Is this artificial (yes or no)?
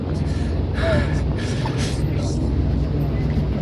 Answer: no